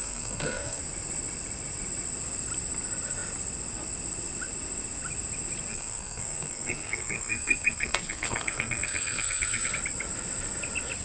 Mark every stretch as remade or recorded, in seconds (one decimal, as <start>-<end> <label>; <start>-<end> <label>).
0.0-0.8 remade; 0.8-5.7 recorded; 5.7-9.7 remade; 9.7-11.0 recorded